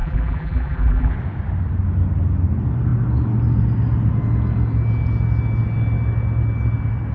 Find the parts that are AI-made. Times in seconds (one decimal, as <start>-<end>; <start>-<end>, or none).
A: 0.0-1.1